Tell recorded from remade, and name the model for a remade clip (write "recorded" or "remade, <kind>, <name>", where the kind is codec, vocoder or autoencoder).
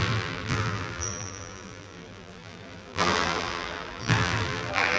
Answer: remade, vocoder, BigVGAN v2